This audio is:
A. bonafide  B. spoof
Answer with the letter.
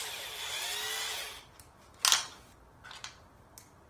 A